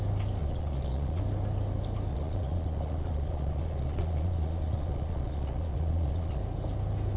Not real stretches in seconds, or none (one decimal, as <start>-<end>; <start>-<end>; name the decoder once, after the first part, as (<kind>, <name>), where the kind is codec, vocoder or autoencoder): 0.4-1.2 (vocoder, Vocos); 2.1-6.4

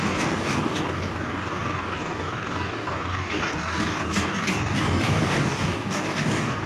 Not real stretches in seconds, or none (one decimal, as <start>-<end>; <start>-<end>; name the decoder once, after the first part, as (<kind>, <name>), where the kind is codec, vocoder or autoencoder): 0.0-6.7 (codec, DAC)

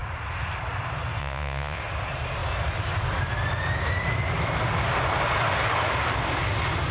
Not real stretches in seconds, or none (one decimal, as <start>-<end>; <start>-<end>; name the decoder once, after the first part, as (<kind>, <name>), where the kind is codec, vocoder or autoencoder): 1.2-1.8 (vocoder, Vocos)

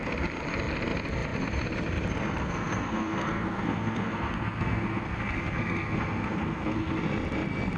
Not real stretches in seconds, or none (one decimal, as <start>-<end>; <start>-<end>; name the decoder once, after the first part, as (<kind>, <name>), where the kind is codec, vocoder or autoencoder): 2.4-7.0 (codec, SNAC)